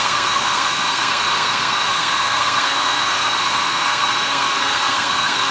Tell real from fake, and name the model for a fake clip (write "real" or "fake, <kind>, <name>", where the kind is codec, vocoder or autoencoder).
fake, codec, SNAC